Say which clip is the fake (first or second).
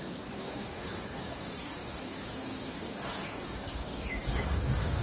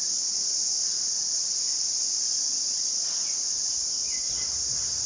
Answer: first